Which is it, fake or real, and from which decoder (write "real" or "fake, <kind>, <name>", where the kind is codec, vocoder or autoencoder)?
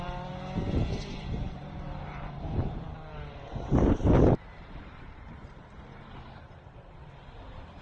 fake, vocoder, BigVGAN v2